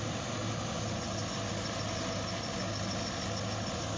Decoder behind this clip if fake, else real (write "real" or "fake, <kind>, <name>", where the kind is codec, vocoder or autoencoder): real